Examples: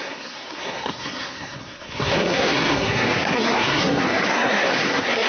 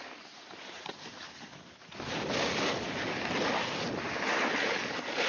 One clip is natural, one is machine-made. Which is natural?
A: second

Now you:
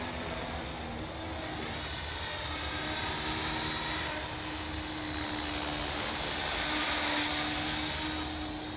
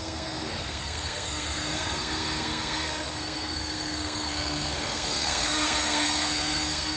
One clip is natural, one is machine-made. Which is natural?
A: first